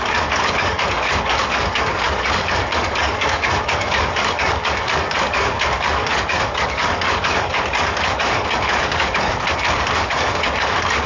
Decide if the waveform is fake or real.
fake